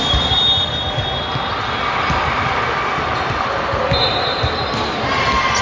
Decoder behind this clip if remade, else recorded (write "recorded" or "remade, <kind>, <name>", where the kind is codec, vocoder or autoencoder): recorded